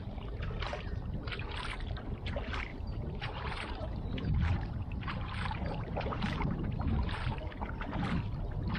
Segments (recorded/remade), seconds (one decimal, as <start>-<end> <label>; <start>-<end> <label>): 0.0-2.7 recorded; 2.7-6.7 remade; 6.7-8.8 recorded